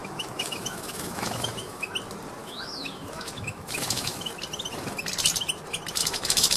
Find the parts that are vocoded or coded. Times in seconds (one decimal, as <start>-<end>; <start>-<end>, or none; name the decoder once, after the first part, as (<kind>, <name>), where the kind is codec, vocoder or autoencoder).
0.0-1.9 (autoencoder, DAC-VAE); 2.4-4.3; 6.0-6.6